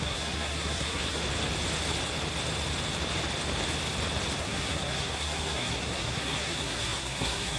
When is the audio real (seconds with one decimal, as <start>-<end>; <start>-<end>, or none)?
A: 1.2-4.4